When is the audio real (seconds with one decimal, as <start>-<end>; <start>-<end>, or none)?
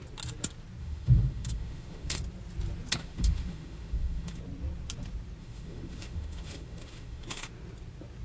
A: 0.0-0.8; 2.2-3.0; 4.4-5.4; 7.5-8.2